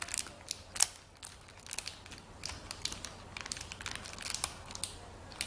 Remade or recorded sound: recorded